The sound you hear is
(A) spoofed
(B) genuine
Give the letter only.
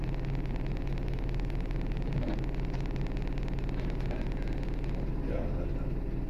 B